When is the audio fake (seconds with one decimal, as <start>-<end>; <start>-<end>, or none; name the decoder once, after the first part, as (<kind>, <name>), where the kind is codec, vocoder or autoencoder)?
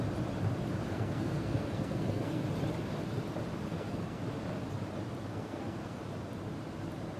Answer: 0.9-2.4 (codec, SNAC); 3.7-4.2; 5.3-6.0